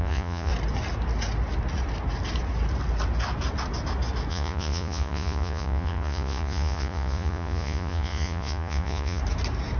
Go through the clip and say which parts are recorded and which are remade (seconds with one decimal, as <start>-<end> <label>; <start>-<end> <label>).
0.0-0.5 remade; 0.5-4.3 recorded; 4.3-9.2 remade; 9.2-9.8 recorded